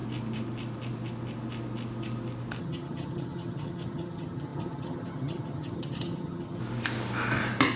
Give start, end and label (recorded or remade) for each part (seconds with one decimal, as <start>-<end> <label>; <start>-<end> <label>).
0.0-2.6 recorded; 2.6-6.6 remade; 6.6-7.8 recorded